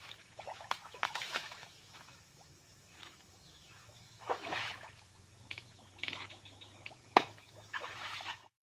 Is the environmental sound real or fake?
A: fake